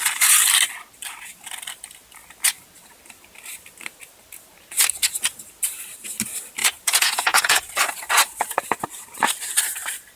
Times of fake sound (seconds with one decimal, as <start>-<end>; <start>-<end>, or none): 6.6-7.7